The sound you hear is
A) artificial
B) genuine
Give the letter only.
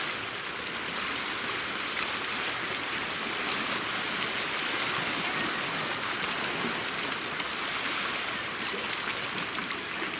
B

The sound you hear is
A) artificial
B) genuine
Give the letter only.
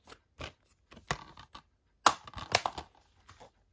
B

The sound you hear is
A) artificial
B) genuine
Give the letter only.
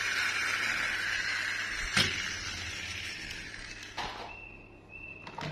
B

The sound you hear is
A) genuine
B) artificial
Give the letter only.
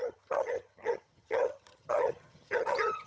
B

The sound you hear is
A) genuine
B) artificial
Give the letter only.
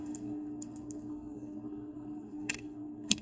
B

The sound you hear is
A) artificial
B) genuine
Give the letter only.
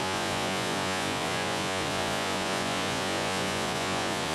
A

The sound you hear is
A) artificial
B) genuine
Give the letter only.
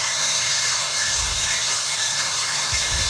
A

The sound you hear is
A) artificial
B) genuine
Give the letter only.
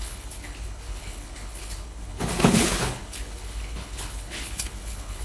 A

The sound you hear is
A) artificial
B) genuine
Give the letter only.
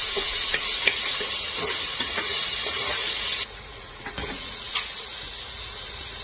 A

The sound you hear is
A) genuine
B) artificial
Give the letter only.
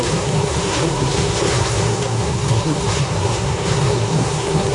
B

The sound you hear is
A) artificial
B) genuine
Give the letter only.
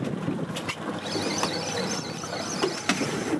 B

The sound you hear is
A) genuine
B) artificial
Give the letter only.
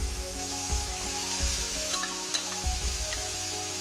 B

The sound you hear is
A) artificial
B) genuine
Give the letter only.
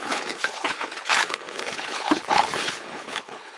A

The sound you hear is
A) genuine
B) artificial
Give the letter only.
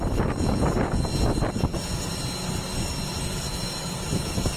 A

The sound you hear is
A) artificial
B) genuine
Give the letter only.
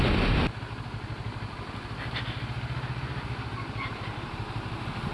B